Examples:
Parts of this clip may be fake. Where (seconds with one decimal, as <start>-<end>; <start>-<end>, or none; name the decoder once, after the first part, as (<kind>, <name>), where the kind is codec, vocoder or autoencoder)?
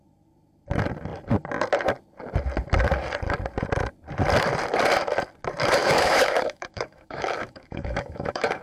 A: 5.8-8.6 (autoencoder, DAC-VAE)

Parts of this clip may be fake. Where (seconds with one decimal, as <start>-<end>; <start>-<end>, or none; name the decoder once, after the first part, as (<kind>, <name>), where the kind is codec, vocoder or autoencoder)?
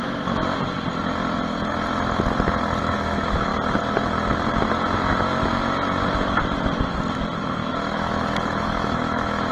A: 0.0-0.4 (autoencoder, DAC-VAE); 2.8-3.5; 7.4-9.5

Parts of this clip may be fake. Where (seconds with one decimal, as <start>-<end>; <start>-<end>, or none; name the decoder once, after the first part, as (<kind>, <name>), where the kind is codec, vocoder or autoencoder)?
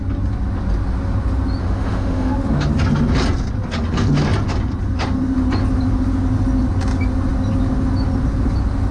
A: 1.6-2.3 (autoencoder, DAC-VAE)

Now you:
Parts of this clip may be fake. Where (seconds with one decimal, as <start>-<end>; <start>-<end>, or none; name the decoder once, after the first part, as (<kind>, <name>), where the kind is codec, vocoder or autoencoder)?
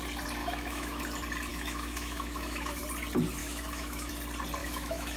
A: 0.4-1.0 (autoencoder, DAC-VAE); 1.5-2.8; 3.4-4.1; 4.6-5.2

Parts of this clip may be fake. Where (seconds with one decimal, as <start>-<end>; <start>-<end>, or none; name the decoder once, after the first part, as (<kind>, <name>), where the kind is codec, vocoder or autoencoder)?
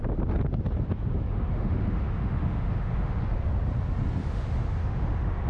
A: 1.3-3.5 (autoencoder, DAC-VAE); 4.2-5.5